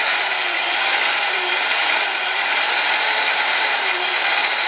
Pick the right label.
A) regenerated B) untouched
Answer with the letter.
A